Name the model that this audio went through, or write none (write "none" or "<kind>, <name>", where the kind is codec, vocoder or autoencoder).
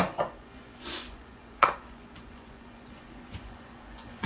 vocoder, Vocos